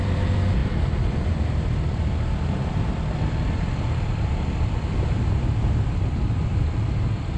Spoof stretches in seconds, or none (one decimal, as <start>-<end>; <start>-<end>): 0.0-7.4